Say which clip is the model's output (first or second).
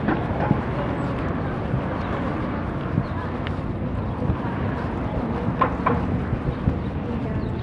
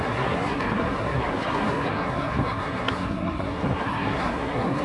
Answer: second